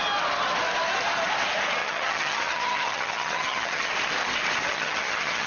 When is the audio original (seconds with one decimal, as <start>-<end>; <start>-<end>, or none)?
0.0-1.8; 3.9-4.7